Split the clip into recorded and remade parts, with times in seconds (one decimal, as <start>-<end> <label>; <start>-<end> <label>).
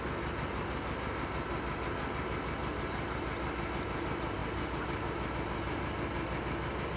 0.0-7.0 recorded